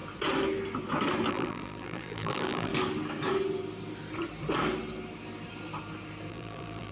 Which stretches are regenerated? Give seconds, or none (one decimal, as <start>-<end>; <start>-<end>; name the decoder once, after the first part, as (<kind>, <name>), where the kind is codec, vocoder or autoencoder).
1.3-2.7 (vocoder, BigVGAN v2); 6.3-6.9